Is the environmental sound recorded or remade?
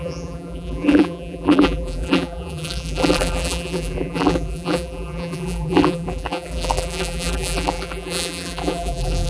remade